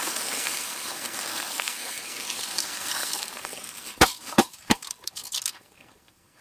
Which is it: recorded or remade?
remade